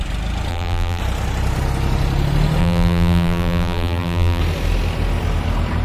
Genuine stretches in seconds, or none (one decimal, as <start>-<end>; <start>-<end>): 0.0-0.5; 1.0-2.6; 4.4-5.8